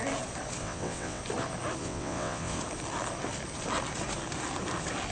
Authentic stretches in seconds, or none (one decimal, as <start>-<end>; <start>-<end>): 0.0-0.6; 1.2-1.8; 2.6-5.1